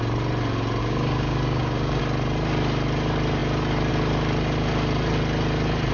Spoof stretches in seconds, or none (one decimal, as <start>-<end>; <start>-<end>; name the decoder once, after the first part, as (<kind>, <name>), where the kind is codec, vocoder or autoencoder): 0.8-2.0 (codec, DAC)